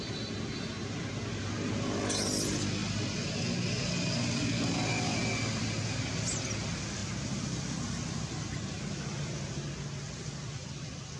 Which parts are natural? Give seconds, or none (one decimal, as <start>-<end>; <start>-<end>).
0.0-11.2